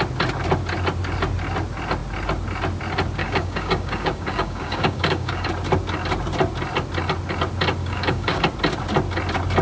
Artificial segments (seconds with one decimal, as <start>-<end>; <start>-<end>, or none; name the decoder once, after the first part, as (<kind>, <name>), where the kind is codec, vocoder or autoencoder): 3.2-5.5 (codec, DAC); 7.8-8.4